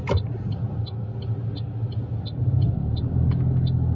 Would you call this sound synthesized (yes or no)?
no